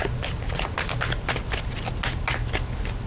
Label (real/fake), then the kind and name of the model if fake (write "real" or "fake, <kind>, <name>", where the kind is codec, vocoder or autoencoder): real